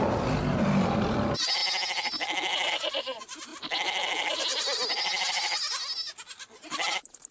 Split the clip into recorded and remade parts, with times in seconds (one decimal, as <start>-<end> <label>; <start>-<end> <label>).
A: 0.0-7.3 recorded